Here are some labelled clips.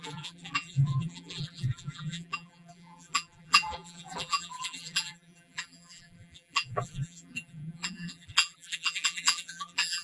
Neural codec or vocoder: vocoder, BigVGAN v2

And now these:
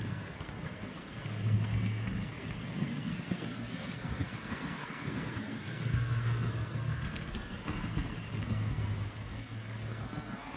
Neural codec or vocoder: codec, SNAC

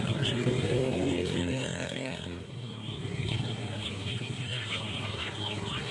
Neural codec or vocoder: codec, SNAC